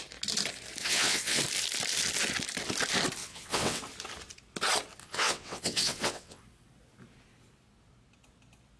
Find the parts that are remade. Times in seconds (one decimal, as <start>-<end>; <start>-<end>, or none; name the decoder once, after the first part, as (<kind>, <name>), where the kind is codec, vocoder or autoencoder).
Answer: 0.8-1.4 (vocoder, WaveNeXt); 3.2-3.8; 5.0-6.4